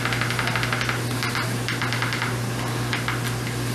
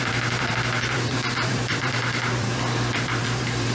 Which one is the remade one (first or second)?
second